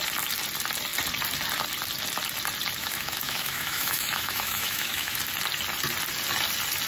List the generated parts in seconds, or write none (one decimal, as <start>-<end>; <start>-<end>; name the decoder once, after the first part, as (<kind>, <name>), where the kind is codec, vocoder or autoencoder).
2.8-5.2 (autoencoder, DAC-VAE)